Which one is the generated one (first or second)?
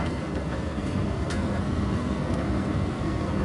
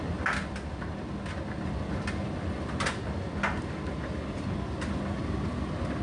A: first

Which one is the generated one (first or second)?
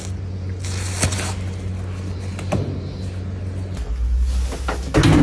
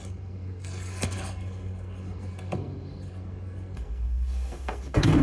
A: second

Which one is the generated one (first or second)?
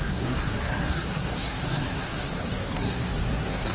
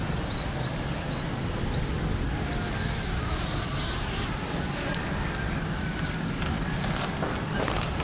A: first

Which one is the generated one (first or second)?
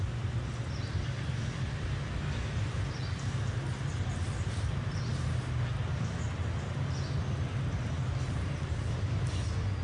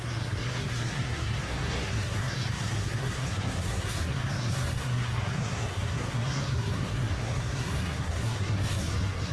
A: second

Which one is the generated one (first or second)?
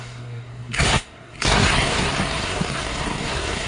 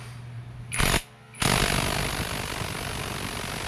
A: first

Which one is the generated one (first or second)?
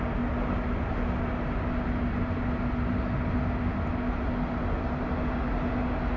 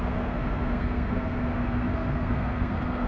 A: second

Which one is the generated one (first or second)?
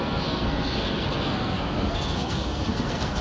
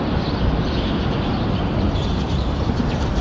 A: first